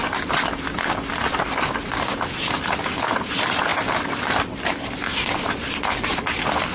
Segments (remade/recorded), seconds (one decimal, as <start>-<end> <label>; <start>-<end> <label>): 0.0-6.7 recorded